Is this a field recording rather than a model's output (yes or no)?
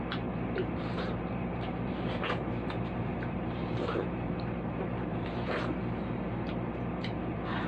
no